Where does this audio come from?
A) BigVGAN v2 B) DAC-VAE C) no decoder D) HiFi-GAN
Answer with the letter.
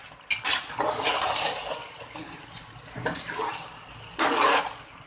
C